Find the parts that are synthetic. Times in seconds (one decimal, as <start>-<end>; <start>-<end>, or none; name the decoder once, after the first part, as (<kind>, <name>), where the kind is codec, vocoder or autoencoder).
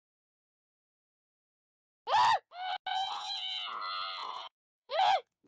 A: 2.9-3.8 (vocoder, Vocos); 4.2-5.5